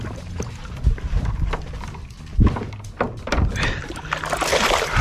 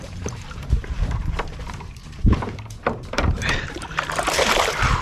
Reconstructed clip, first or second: second